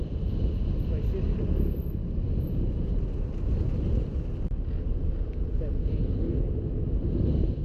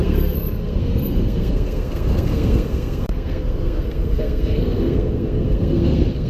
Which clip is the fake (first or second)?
second